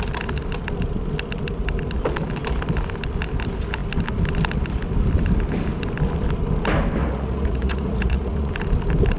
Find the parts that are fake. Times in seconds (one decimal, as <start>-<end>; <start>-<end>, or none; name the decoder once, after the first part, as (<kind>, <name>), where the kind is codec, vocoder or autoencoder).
7.0-8.5 (vocoder, Vocos)